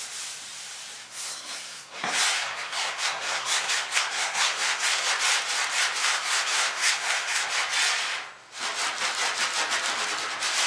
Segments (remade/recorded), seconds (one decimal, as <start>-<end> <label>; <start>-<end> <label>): 0.0-1.0 recorded; 1.0-5.1 remade; 5.1-6.0 recorded; 6.0-7.5 remade; 7.5-10.7 recorded